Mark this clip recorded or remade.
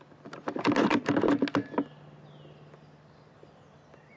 recorded